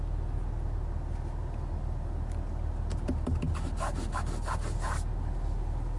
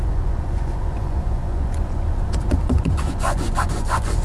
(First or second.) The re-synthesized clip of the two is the second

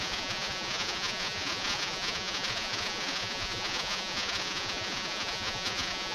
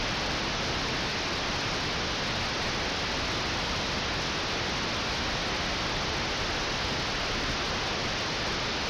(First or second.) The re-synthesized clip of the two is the first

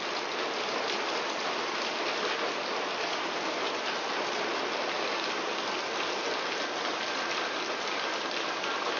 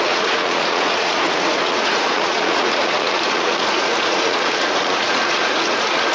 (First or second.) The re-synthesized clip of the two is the second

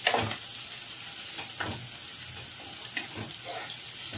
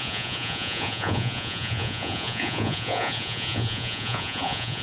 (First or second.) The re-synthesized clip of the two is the second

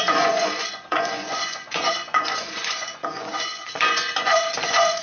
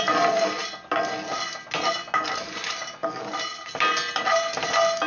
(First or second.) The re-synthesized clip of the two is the first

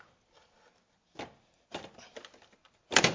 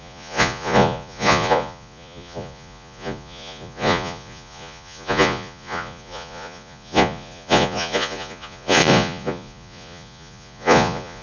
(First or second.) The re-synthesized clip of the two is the second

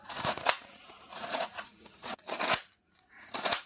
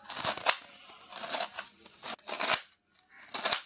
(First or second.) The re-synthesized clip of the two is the first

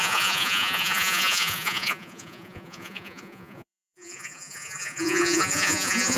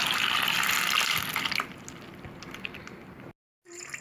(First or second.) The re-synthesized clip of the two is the first